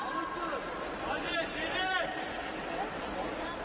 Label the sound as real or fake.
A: real